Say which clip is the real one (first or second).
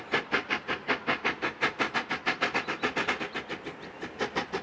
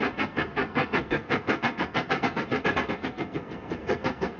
first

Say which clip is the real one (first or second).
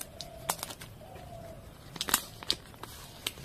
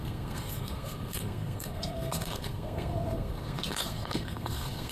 first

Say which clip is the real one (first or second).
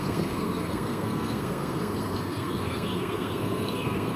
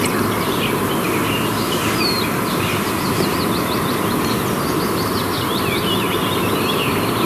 second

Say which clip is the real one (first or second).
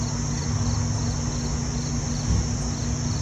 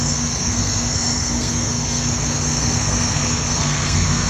first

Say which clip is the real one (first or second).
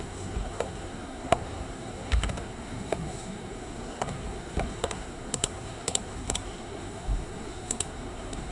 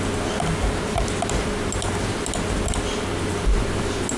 second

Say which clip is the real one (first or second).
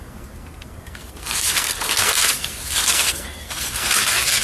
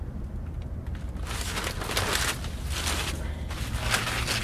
second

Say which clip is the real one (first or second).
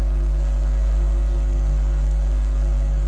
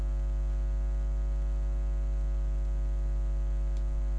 second